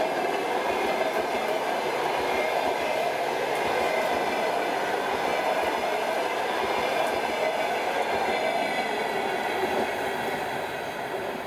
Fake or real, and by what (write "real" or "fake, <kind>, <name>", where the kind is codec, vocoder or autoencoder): real